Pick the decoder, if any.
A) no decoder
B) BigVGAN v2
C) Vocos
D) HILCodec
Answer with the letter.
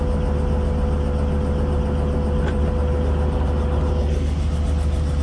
A